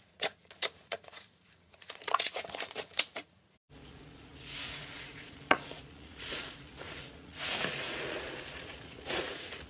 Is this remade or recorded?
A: remade